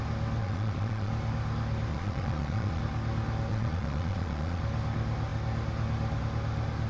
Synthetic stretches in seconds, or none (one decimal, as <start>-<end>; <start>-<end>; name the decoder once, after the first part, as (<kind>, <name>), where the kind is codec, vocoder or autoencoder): 0.4-1.1 (vocoder, Vocos); 1.9-2.8; 3.5-4.6